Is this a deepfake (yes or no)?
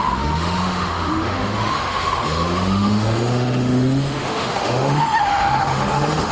yes